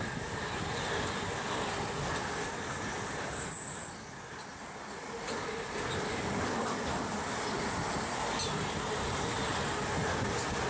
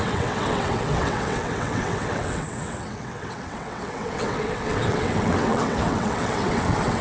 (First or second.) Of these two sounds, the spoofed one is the second